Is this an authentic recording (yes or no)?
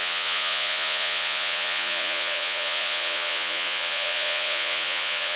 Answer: no